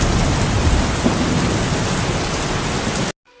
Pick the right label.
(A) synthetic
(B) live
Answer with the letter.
B